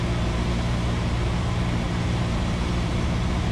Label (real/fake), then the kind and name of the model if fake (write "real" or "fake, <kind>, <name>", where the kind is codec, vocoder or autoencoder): real